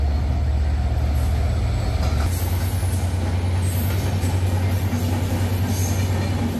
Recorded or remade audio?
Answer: recorded